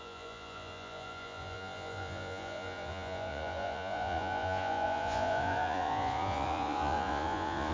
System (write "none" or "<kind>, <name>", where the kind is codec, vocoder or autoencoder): vocoder, Vocos